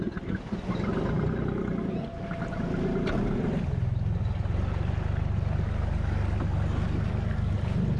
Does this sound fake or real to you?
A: real